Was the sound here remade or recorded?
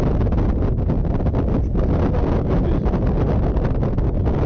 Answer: recorded